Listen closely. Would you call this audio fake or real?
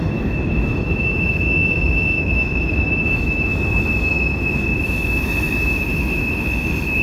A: fake